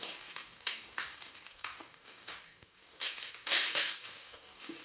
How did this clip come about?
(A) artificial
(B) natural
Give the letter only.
A